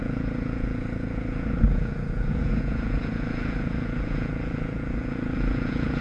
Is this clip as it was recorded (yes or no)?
no